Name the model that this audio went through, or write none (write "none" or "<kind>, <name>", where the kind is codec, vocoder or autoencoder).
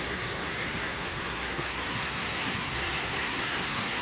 codec, SNAC